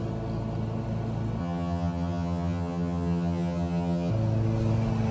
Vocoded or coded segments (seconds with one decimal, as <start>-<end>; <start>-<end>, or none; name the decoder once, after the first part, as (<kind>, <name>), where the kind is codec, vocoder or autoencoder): 1.4-4.1 (vocoder, HiFi-GAN)